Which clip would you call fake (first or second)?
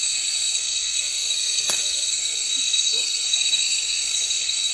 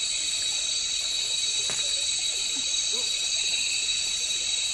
first